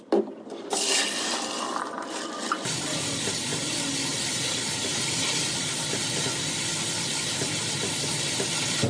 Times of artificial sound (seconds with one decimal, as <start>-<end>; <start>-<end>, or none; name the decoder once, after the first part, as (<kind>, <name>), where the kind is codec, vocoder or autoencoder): none